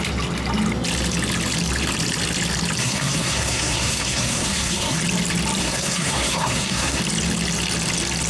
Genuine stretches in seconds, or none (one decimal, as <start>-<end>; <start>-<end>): 0.0-2.8; 5.0-5.6; 7.0-8.3